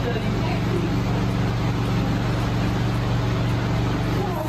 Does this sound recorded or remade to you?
recorded